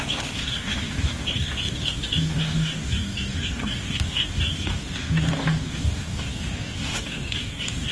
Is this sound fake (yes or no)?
yes